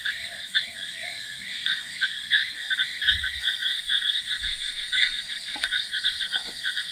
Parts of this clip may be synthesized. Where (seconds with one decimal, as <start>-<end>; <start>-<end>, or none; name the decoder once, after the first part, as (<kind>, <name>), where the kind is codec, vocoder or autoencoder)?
0.0-6.9 (codec, SNAC)